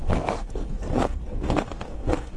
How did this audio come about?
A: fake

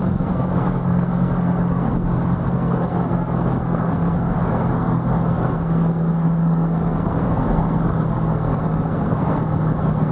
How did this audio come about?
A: fake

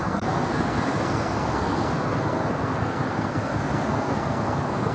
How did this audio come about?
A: fake